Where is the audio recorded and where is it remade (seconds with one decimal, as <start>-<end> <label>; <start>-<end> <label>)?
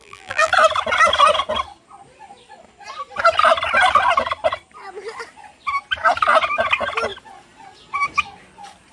0.0-0.5 remade; 0.5-8.9 recorded